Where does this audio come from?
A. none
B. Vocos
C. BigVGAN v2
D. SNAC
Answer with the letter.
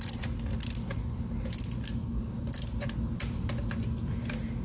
A